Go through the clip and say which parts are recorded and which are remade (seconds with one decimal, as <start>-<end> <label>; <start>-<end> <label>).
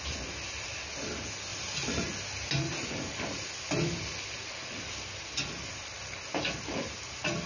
0.0-7.5 recorded